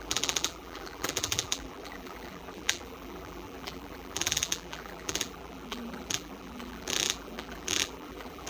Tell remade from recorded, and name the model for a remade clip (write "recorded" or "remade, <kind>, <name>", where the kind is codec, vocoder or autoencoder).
remade, vocoder, BigVGAN v2